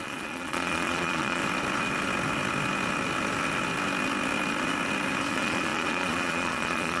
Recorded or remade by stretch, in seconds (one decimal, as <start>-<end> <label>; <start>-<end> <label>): 0.0-1.4 remade; 1.4-5.3 recorded; 5.3-7.0 remade

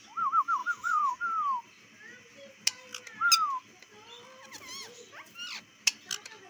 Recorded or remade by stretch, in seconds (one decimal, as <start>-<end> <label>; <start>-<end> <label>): 0.0-0.6 recorded; 0.6-1.1 remade; 1.1-6.5 recorded

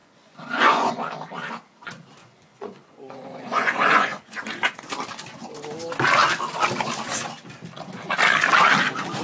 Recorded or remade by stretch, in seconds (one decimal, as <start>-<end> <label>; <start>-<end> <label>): 0.0-0.9 remade; 0.9-2.2 recorded; 2.2-4.9 remade; 4.9-9.2 recorded